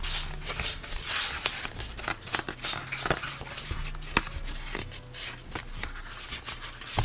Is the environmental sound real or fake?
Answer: real